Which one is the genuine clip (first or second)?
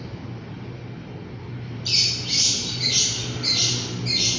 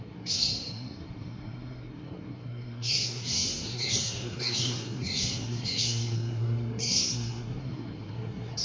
first